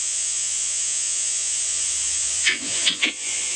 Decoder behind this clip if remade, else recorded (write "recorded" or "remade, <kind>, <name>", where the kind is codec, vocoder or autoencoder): remade, vocoder, Vocos